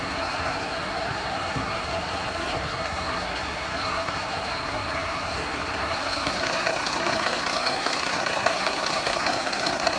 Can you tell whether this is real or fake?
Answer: fake